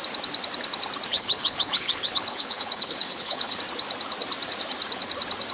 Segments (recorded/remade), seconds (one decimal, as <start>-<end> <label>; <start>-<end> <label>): 0.0-1.1 recorded; 1.1-3.6 remade; 3.6-5.5 recorded